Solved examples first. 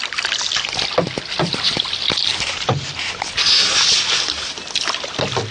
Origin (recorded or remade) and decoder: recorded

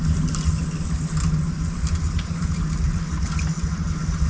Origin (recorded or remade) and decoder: recorded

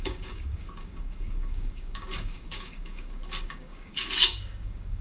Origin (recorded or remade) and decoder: remade, codec, DAC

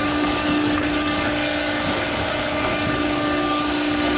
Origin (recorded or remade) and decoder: remade, codec, DAC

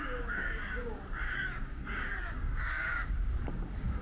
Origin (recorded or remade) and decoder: remade, codec, DAC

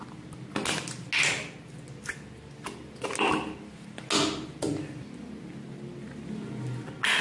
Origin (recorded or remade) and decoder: recorded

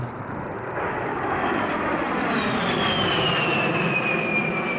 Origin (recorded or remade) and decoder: recorded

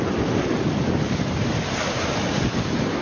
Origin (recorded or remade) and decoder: recorded